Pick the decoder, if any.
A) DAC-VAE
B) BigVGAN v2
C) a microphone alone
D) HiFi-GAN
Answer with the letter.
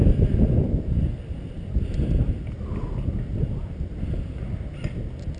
C